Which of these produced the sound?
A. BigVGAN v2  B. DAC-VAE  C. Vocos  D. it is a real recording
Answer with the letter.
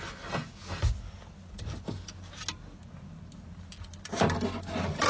D